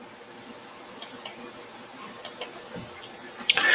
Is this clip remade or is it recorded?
recorded